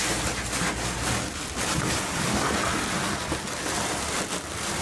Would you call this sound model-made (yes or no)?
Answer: no